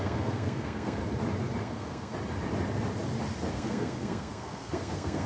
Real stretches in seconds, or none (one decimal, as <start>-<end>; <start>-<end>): 1.0-1.6; 2.1-3.5